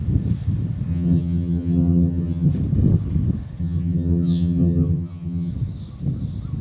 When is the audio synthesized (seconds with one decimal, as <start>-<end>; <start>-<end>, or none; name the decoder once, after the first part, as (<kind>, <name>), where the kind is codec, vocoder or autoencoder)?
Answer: 0.9-2.5 (vocoder, HiFi-GAN); 3.6-5.5